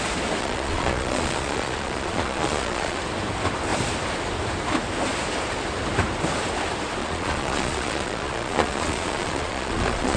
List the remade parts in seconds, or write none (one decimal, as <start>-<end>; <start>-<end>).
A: 0.4-3.0; 7.0-10.2